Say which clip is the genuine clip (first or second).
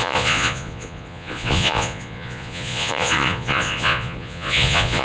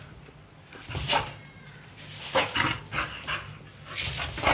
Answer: second